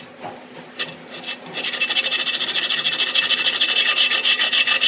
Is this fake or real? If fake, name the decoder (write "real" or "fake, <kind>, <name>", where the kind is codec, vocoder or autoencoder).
real